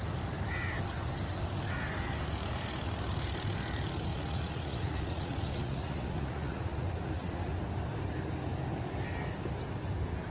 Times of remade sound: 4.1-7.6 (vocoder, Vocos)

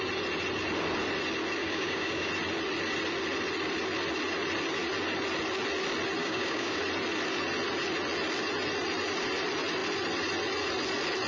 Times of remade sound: 1.6-2.3 (codec, DAC); 6.2-6.8

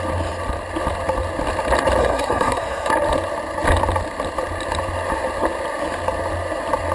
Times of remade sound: 2.0-2.9 (codec, SNAC)